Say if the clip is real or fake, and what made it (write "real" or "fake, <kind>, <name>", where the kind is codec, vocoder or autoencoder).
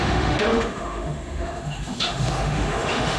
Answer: fake, autoencoder, DAC-VAE